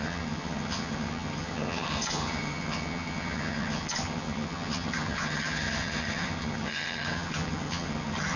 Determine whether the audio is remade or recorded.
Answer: remade